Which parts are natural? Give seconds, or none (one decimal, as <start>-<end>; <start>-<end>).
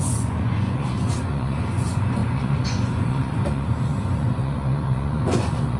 none